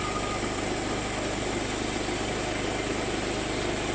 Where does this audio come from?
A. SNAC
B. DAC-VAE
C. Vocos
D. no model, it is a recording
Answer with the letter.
D